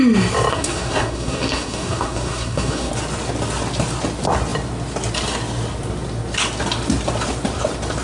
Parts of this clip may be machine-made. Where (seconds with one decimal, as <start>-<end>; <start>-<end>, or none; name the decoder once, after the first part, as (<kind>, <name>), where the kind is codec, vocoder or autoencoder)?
0.5-2.9 (codec, SNAC)